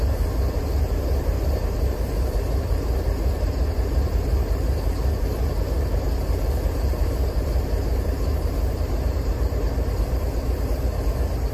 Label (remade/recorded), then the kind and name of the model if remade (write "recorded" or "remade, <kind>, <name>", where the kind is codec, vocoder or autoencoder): remade, vocoder, BigVGAN v2